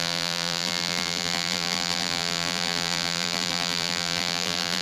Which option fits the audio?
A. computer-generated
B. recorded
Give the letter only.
A